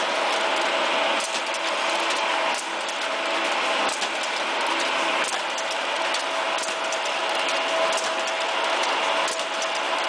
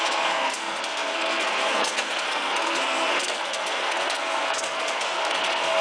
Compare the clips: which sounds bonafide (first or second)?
first